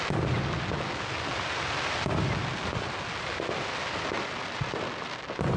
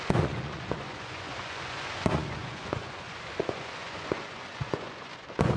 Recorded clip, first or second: first